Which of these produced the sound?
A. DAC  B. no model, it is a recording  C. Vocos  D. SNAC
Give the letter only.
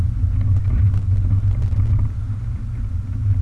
B